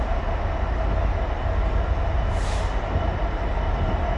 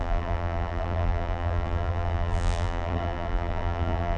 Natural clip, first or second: first